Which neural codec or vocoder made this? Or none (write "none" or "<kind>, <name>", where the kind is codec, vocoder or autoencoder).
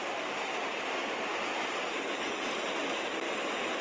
none